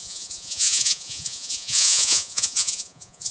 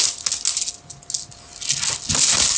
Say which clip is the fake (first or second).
first